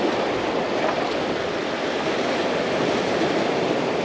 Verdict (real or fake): fake